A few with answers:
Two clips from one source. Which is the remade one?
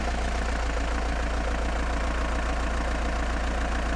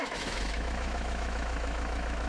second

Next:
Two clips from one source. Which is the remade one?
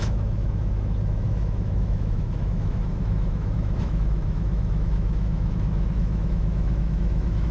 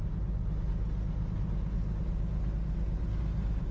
first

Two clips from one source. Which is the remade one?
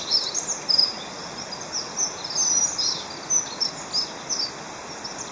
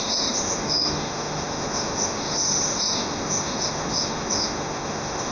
second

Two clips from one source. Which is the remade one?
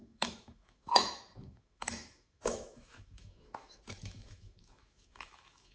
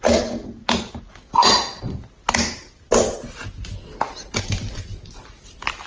first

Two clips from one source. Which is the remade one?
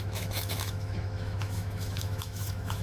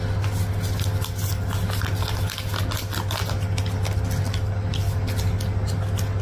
first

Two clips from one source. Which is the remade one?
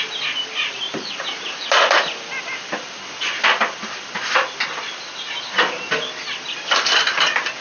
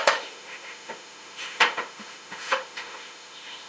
second